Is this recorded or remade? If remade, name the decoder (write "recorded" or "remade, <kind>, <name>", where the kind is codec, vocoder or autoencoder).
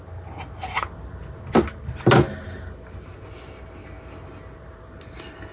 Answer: recorded